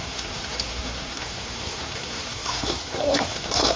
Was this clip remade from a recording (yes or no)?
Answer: yes